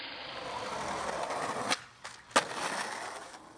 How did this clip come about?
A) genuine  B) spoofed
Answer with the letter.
A